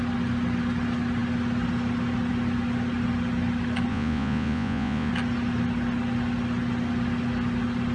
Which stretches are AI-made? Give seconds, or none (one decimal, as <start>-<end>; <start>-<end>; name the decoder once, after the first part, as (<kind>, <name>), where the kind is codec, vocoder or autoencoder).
3.9-5.1 (vocoder, Vocos)